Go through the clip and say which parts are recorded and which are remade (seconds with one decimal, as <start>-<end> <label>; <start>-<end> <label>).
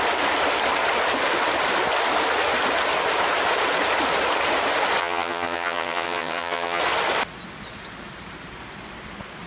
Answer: 0.0-5.0 recorded; 5.0-6.8 remade; 6.8-9.5 recorded